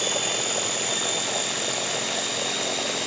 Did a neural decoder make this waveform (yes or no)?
no